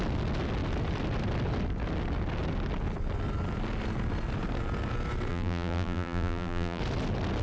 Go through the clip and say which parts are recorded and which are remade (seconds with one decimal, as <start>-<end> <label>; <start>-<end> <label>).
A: 0.0-5.3 recorded; 5.3-6.8 remade; 6.8-7.4 recorded